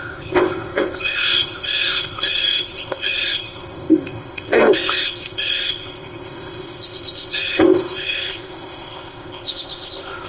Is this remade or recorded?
remade